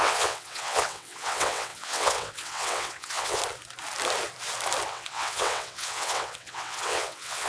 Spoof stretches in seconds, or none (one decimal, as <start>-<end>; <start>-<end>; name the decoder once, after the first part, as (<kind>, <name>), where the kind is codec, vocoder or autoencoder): 0.0-3.4 (vocoder, WaveNeXt); 4.9-7.5